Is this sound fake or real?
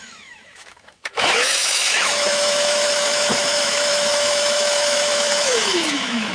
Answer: fake